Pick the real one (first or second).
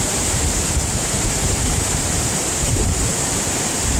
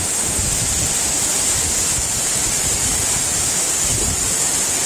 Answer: second